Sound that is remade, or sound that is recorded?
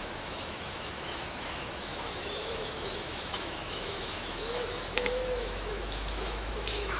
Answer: remade